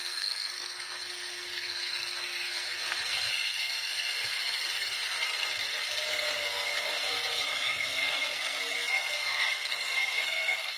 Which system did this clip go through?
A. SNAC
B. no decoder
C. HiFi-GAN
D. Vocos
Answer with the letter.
A